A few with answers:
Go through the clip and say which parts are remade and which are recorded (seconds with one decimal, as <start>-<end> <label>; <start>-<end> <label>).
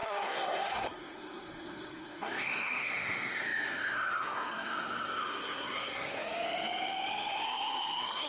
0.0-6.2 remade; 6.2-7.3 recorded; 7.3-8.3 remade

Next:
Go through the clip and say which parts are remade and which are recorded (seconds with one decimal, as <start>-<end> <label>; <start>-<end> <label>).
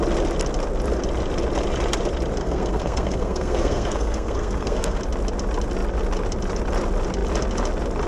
0.0-2.4 recorded; 2.4-5.0 remade; 5.0-8.1 recorded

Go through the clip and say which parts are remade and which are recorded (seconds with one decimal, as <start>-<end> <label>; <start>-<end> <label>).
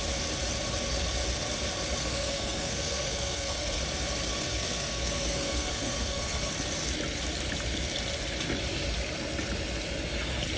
0.0-2.0 recorded; 2.0-3.8 remade; 3.8-4.3 recorded; 4.3-6.5 remade; 6.5-10.6 recorded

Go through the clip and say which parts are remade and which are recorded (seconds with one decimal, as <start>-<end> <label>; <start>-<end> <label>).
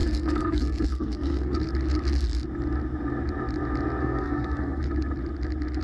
0.0-1.7 remade; 1.7-4.0 recorded; 4.0-4.9 remade; 4.9-5.8 recorded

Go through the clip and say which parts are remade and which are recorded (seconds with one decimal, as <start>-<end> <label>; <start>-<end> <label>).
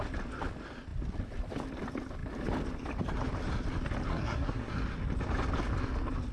0.0-4.1 recorded; 4.1-4.7 remade; 4.7-6.3 recorded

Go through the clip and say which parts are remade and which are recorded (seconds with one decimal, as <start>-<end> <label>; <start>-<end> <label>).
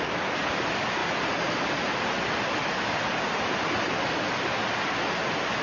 0.0-5.6 recorded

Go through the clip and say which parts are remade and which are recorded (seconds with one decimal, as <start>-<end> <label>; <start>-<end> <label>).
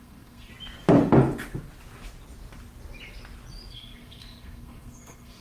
0.0-0.5 remade; 0.5-3.7 recorded; 3.7-5.4 remade